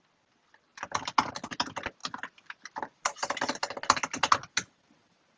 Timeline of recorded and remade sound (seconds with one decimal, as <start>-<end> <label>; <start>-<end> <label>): 0.0-5.4 recorded